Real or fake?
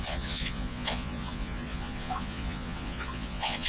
fake